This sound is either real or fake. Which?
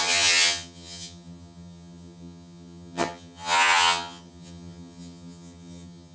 fake